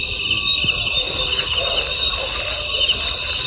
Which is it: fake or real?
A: real